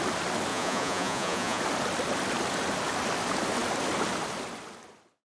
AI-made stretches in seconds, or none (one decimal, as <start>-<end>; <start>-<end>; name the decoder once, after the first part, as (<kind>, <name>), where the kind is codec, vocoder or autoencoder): 0.5-1.6 (vocoder, Vocos)